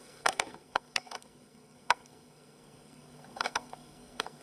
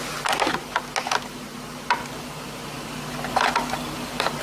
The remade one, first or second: first